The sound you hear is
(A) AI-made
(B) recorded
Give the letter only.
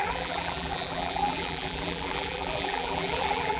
A